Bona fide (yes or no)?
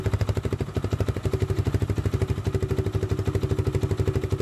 yes